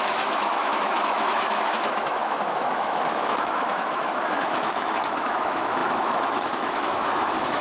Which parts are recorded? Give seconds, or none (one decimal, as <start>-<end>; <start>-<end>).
none